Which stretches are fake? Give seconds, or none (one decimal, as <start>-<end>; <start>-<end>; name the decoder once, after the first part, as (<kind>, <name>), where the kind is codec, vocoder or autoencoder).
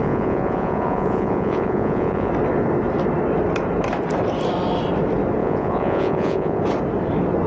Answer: 0.0-2.3 (vocoder, Vocos); 5.4-6.6